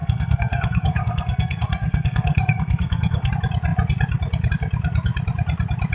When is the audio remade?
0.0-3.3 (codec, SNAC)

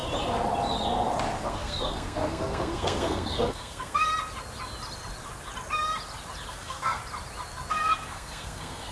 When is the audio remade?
1.5-4.1 (codec, SNAC); 6.5-7.0; 7.7-8.9